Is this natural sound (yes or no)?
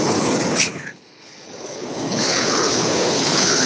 no